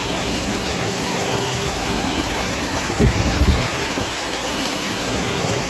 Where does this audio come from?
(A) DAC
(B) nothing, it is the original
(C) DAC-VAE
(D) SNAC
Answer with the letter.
D